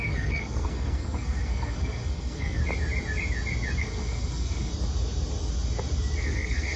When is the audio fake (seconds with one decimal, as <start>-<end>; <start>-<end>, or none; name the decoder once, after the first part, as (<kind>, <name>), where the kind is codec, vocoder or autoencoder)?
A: 0.0-2.6 (codec, SNAC); 3.8-4.7; 6.2-6.8